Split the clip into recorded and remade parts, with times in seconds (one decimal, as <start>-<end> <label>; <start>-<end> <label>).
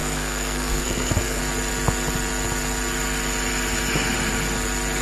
0.0-1.4 remade; 1.4-5.0 recorded